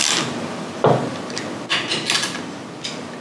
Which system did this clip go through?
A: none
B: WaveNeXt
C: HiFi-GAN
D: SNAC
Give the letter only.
A